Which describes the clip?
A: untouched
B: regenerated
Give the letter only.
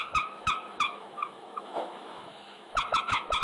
B